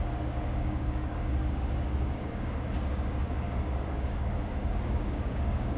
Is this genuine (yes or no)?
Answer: no